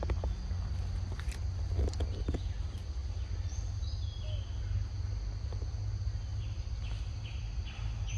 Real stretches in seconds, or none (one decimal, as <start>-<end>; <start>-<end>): 0.0-8.2